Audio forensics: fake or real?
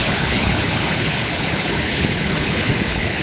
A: fake